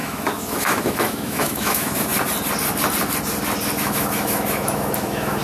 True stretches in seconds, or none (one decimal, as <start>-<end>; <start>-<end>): 2.1-3.8